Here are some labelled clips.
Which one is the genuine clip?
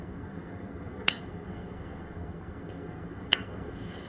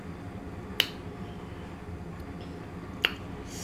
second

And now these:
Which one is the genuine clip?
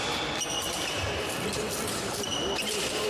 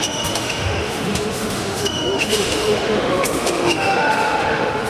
first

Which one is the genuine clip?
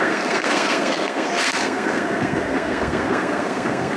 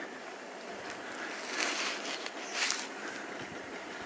second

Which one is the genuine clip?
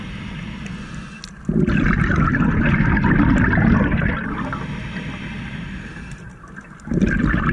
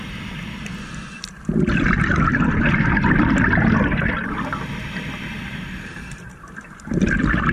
first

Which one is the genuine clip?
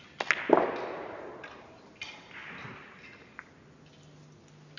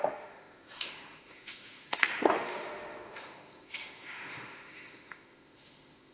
first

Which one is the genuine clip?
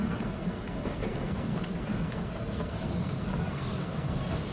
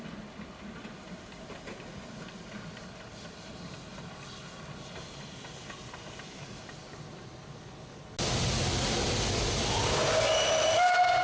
second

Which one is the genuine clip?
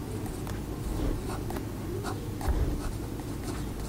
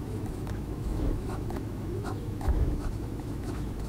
first